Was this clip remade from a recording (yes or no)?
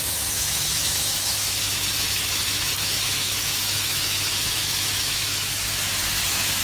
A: yes